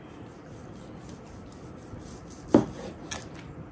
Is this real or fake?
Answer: real